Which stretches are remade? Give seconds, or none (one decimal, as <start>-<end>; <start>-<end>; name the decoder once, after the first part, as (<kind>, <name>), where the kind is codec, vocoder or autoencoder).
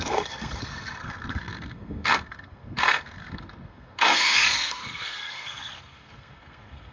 0.0-6.9 (codec, SNAC)